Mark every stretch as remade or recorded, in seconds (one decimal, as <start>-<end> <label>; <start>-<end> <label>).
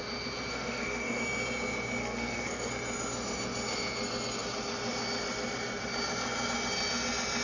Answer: 0.0-0.5 recorded; 0.5-1.2 remade; 1.2-2.0 recorded; 2.0-2.7 remade; 2.7-7.4 recorded